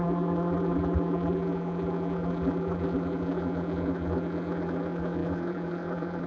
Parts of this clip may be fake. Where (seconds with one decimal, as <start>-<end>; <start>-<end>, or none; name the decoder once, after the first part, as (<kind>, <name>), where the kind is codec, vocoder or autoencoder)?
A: 0.0-6.3 (vocoder, BigVGAN v2)